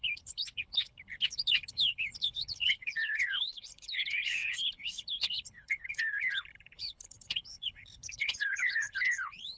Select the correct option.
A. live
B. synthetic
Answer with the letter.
B